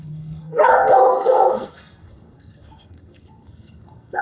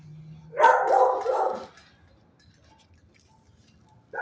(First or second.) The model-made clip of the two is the first